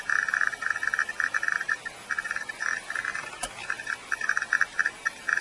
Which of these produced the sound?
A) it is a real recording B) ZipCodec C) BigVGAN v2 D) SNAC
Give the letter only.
A